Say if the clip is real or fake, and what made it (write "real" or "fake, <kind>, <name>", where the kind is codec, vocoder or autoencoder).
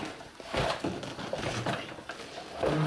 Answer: real